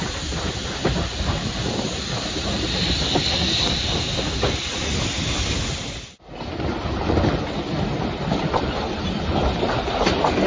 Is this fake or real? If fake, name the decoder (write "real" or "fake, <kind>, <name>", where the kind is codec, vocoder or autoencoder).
real